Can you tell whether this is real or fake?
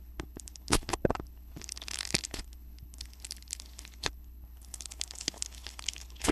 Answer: fake